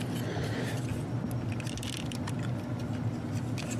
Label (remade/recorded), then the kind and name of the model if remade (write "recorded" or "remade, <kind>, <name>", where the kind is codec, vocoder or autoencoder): recorded